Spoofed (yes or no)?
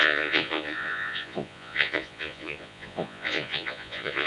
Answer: yes